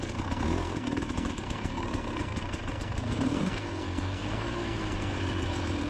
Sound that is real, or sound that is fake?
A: fake